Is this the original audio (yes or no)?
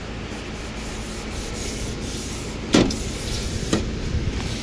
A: yes